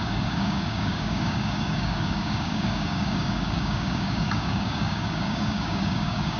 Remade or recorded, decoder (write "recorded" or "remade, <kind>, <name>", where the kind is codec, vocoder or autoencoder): remade, codec, DAC